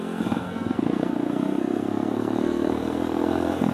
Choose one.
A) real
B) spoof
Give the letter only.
B